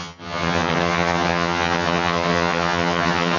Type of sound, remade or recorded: remade